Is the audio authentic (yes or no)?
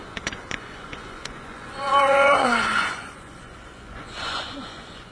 no